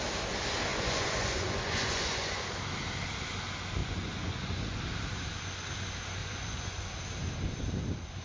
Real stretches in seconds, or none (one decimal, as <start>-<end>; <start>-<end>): 0.0-0.7; 2.4-3.8; 4.8-6.2; 6.9-8.2